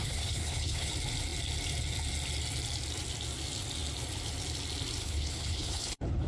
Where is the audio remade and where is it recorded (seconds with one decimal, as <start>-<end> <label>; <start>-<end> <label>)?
0.0-0.9 remade; 0.9-5.0 recorded; 5.0-6.3 remade